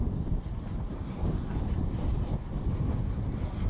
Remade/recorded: recorded